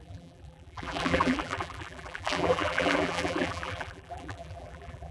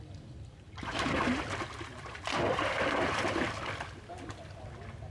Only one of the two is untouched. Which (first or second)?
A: second